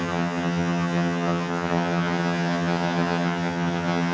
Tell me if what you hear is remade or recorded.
remade